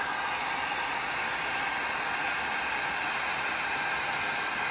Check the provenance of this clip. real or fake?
real